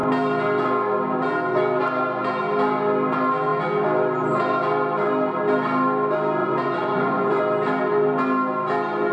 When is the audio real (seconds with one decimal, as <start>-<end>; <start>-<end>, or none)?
0.0-6.4; 7.4-9.1